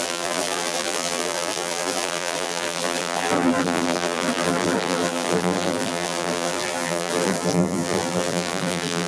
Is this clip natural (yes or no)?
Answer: no